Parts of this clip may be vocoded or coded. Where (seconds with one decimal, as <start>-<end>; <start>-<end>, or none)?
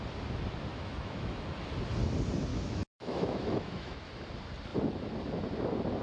0.7-1.5; 2.5-4.1